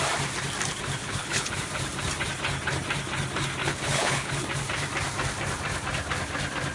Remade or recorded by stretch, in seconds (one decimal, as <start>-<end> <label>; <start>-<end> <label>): 0.0-1.0 recorded; 1.0-1.5 remade; 1.5-3.6 recorded; 3.6-4.3 remade; 4.3-6.7 recorded